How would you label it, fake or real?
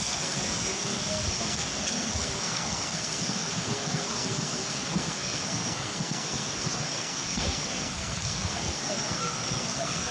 fake